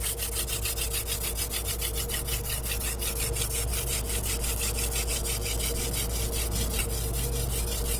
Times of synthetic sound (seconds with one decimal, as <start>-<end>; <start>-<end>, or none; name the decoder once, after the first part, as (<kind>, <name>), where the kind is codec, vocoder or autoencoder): none